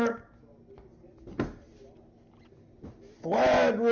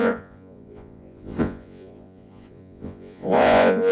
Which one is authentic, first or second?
first